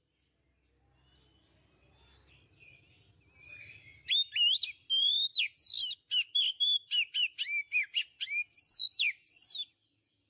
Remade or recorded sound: recorded